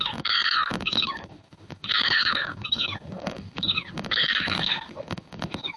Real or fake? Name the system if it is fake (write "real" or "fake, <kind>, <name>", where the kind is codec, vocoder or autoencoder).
fake, autoencoder, DAC-VAE